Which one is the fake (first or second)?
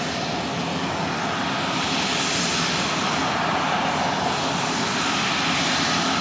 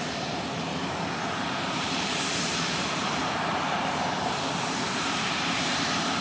second